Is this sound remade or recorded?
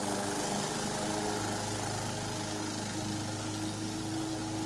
recorded